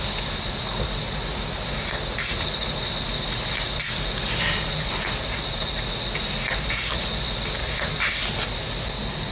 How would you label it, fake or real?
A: real